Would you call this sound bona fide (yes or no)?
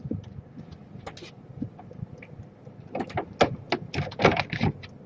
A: yes